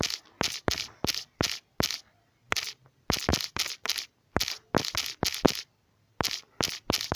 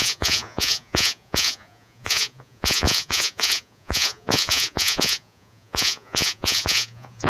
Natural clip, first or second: first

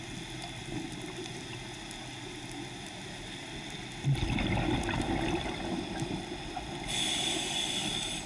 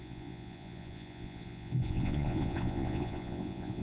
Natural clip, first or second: first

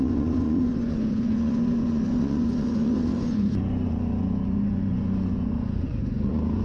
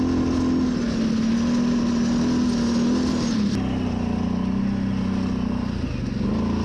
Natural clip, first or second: second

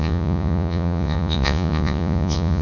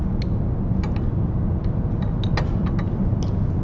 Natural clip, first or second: second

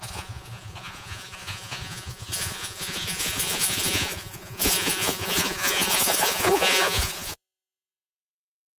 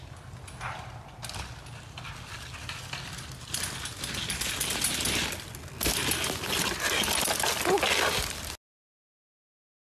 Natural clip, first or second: second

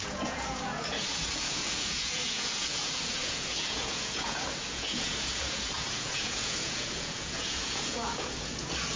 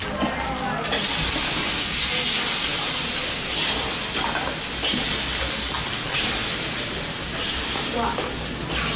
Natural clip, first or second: second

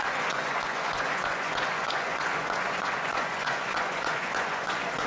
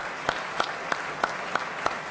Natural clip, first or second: second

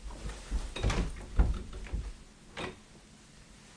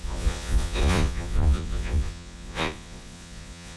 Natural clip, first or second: first